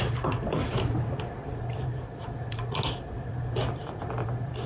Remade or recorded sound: remade